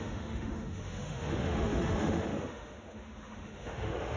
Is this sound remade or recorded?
remade